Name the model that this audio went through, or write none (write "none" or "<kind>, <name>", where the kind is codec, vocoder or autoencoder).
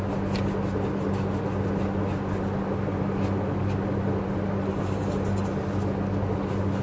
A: none